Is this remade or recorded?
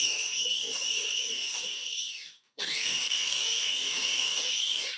remade